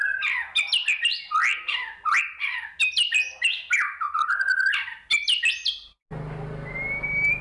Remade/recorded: recorded